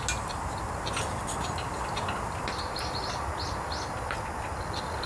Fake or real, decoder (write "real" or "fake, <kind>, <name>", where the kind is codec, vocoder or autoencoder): real